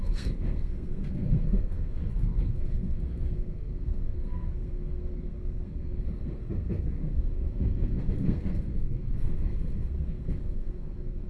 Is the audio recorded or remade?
remade